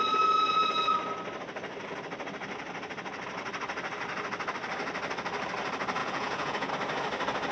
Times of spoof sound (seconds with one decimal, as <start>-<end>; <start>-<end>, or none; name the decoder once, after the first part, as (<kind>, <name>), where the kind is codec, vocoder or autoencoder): 6.0-6.7 (vocoder, Vocos)